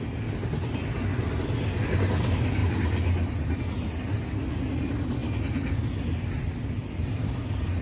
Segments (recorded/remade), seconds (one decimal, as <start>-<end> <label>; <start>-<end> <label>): 0.0-7.8 recorded